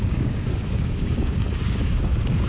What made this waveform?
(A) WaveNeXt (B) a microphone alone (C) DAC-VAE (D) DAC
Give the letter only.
D